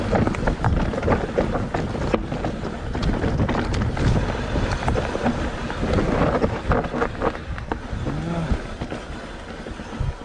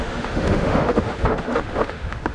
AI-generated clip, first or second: second